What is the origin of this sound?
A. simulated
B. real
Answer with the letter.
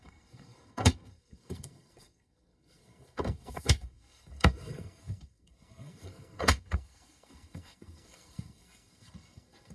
A